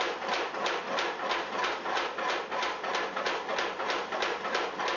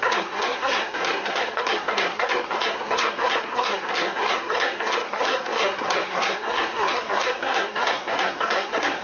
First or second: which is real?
first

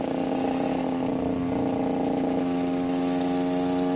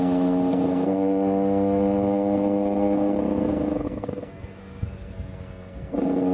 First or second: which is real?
first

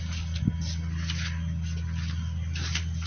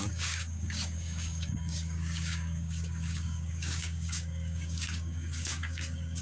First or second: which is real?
first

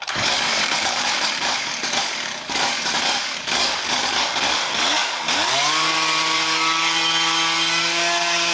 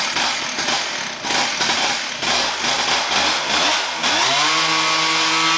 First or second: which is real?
second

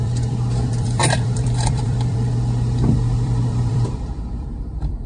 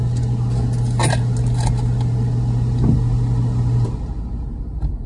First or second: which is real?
second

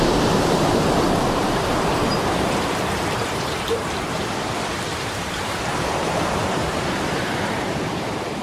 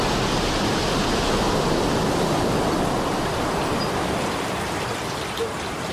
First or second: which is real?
second